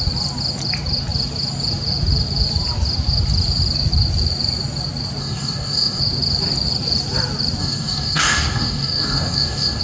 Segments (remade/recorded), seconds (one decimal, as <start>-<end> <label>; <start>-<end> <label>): 0.0-5.2 recorded; 5.2-6.0 remade; 6.0-7.6 recorded; 7.6-9.8 remade